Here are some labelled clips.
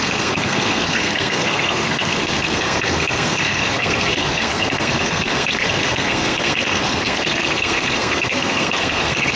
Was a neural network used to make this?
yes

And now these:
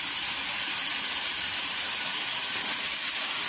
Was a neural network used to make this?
no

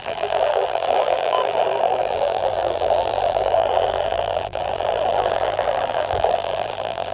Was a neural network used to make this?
yes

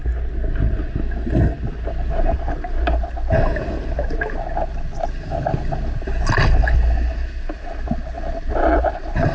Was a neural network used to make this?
no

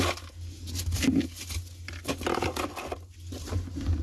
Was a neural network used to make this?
no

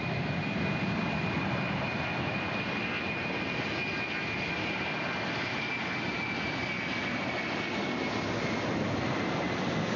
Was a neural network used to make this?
no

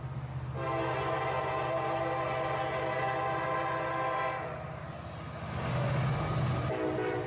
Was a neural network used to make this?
no